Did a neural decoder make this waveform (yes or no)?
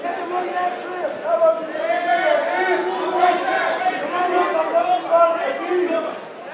no